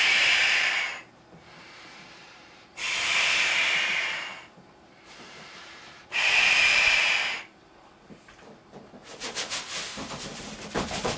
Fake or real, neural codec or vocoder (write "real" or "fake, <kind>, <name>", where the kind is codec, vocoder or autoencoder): fake, vocoder, BigVGAN v2